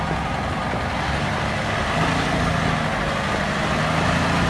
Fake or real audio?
real